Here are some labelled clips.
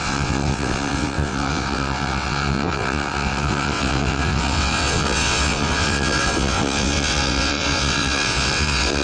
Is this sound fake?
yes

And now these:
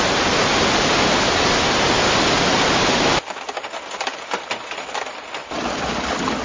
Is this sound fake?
no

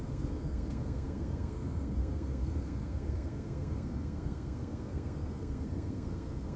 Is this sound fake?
yes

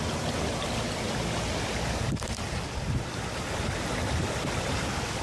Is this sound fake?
no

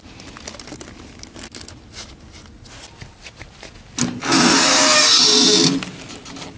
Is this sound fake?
no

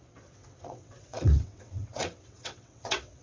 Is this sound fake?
yes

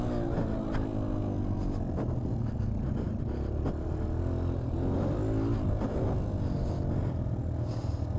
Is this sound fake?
no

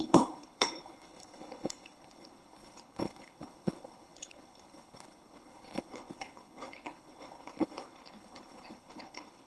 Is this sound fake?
yes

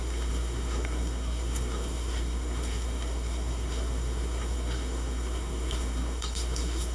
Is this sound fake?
yes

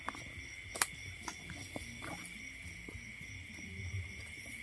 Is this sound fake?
no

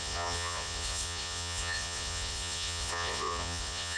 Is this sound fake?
yes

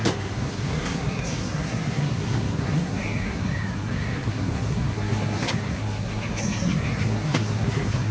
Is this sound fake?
yes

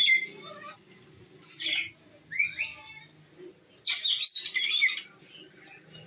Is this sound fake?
no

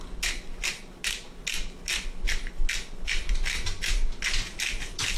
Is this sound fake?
no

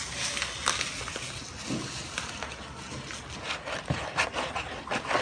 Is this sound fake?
no